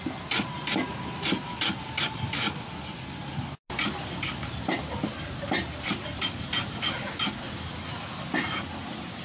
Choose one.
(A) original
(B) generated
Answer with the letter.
A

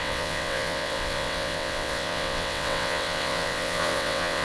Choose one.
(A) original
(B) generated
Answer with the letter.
B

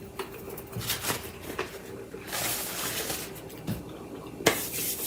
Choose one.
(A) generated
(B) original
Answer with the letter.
B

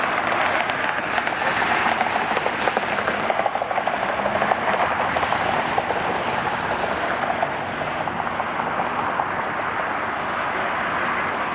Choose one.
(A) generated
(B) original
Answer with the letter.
B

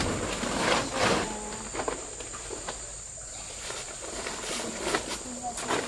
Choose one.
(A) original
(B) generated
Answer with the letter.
A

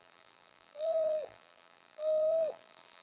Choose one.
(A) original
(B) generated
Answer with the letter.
B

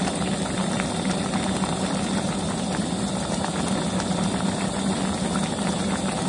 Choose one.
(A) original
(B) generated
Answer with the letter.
A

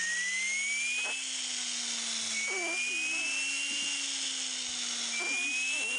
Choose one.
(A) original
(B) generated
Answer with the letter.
A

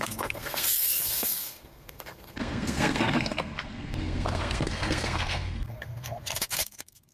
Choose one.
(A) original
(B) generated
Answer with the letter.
B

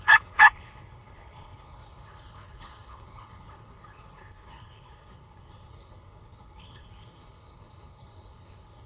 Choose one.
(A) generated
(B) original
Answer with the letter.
A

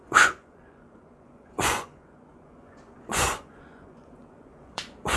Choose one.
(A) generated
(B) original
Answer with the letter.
A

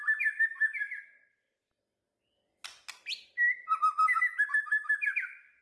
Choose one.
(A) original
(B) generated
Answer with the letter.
A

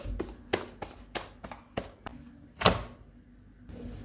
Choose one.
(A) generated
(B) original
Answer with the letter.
B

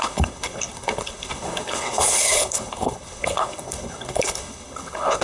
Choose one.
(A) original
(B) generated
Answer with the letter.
B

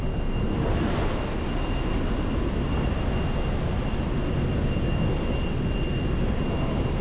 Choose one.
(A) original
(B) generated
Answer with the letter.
A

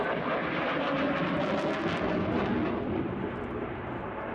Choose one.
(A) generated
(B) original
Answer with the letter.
B